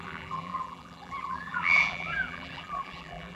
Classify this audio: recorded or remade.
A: remade